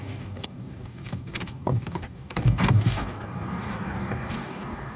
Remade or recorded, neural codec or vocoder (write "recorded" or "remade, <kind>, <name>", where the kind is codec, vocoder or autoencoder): remade, codec, DAC